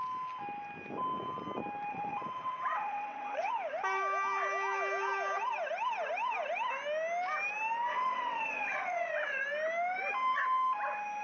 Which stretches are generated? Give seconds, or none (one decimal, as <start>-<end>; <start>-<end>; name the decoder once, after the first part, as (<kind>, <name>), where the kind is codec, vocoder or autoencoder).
1.9-3.5 (vocoder, WaveNeXt); 7.9-9.4